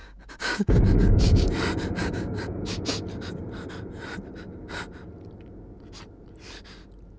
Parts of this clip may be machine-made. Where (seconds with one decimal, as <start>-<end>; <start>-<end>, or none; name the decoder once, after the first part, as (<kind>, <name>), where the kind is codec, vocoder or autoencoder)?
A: 0.0-1.5 (codec, DAC); 2.0-2.8